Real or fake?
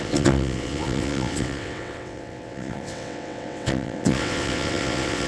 fake